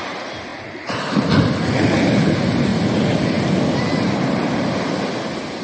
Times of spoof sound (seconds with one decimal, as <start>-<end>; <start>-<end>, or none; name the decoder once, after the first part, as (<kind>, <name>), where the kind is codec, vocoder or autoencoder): none

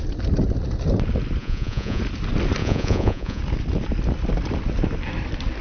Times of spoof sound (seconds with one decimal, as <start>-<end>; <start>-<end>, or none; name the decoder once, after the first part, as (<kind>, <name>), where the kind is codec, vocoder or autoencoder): 1.4-2.0 (vocoder, Vocos); 2.6-3.4

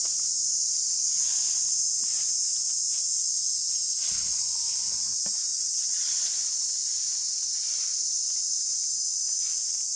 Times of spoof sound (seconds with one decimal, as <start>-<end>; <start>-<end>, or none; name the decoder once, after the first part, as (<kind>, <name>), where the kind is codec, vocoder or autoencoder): 3.6-4.5 (vocoder, Vocos); 5.5-6.7

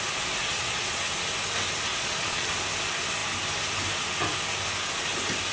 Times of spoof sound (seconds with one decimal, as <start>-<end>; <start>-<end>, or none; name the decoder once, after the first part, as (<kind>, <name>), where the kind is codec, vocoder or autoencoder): 0.4-1.0 (vocoder, Vocos); 1.9-2.5

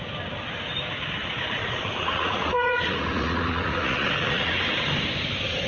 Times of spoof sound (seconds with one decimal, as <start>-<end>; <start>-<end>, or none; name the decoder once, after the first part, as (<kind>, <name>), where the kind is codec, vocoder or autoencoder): 1.2-4.6 (vocoder, Vocos)

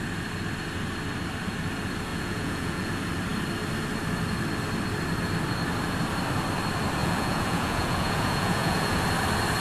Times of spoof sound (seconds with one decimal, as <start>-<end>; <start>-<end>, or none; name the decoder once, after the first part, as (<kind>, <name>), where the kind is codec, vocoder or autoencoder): 2.1-2.9 (vocoder, Vocos); 7.0-9.0

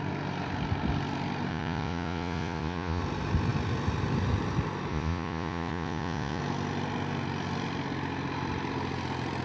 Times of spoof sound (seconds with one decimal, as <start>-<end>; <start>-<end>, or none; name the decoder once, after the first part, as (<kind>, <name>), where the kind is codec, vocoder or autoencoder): 1.5-3.0 (vocoder, Vocos); 4.9-6.4